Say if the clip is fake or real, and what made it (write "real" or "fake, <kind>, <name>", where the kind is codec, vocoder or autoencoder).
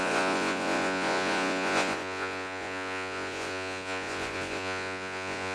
fake, vocoder, Vocos